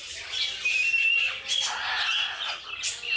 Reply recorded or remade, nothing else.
recorded